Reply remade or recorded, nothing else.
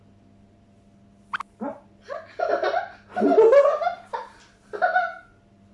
recorded